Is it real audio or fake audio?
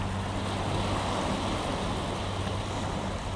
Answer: real